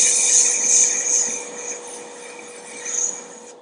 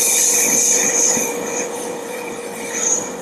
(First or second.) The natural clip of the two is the first